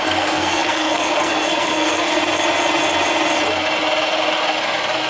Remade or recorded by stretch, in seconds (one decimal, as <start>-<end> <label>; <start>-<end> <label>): 0.0-2.2 remade; 2.2-5.1 recorded